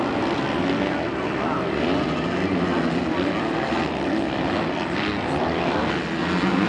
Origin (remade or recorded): recorded